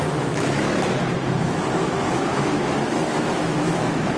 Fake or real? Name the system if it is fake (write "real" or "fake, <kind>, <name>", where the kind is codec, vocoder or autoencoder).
fake, autoencoder, DAC-VAE